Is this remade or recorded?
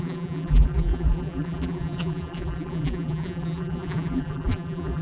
remade